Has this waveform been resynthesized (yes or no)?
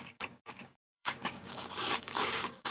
yes